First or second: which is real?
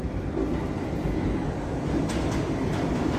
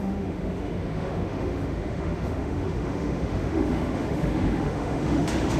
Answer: first